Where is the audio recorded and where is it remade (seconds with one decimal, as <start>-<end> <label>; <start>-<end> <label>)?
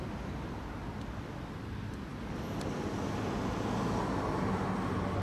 0.0-5.2 recorded